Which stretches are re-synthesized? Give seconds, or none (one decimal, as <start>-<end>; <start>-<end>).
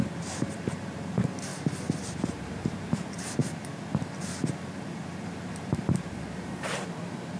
0.0-1.5; 2.0-3.4; 5.2-7.4